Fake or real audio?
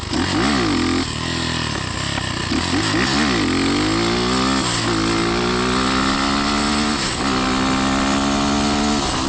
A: real